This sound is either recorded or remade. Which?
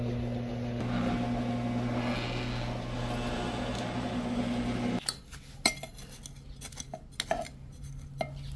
recorded